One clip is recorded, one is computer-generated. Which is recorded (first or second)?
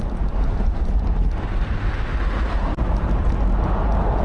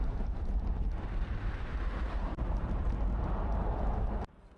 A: first